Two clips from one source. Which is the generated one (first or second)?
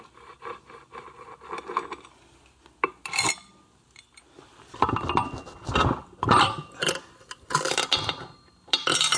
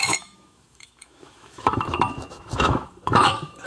second